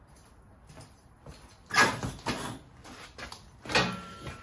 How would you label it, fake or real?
real